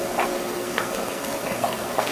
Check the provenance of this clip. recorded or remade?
remade